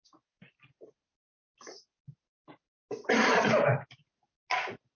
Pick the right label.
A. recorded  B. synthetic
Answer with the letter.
A